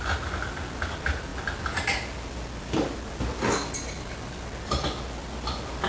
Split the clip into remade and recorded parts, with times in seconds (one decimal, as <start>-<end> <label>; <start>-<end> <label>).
0.0-5.9 recorded